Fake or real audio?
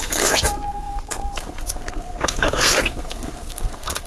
fake